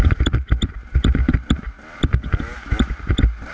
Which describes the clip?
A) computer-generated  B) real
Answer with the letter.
B